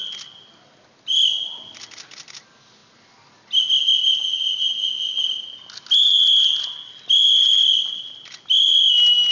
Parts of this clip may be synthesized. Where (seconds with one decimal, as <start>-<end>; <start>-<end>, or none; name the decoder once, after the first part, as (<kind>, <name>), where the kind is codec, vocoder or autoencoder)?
none